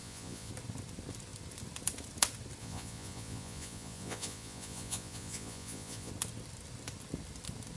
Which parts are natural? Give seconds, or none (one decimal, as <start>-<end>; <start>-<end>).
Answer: 0.5-2.6; 6.1-7.8